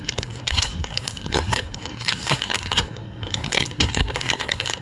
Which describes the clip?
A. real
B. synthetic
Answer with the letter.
B